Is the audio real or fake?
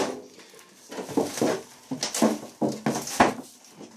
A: real